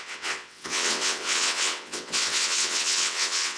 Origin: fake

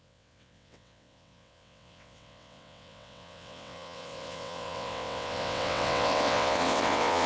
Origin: fake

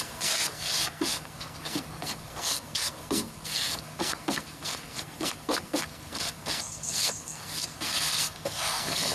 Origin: fake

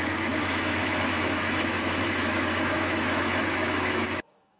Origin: fake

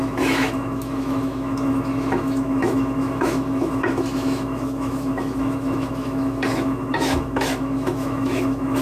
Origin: fake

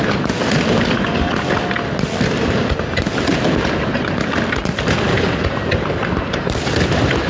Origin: real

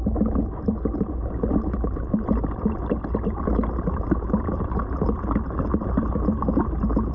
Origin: real